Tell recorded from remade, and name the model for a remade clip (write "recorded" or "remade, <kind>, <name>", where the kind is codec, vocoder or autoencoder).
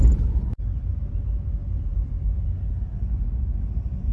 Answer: recorded